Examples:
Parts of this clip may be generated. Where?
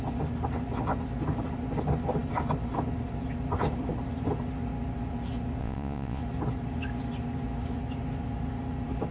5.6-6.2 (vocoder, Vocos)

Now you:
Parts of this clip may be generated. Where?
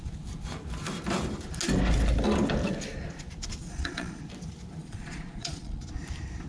3.6-4.2 (vocoder, Vocos); 4.8-5.8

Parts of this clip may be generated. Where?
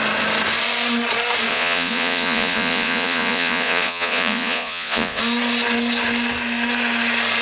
1.5-5.2 (vocoder, Vocos)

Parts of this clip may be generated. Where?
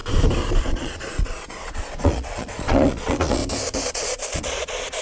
0.6-3.4 (vocoder, Vocos); 3.9-5.0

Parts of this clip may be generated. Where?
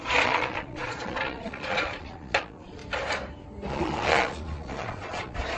0.0-2.8 (vocoder, Vocos); 3.7-5.6